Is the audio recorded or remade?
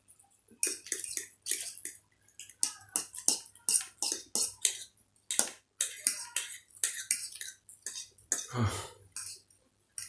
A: recorded